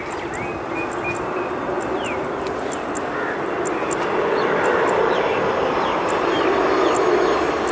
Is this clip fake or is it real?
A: real